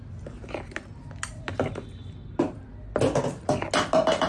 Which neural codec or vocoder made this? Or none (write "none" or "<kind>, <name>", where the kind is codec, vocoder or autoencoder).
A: none